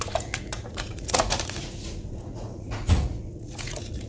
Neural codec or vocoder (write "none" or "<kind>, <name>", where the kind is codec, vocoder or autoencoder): vocoder, Vocos